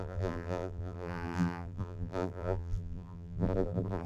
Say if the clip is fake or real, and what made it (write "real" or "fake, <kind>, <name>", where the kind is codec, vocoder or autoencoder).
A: fake, vocoder, BigVGAN v2